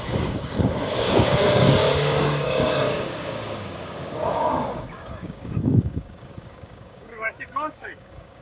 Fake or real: fake